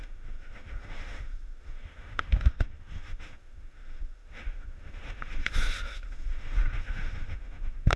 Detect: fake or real fake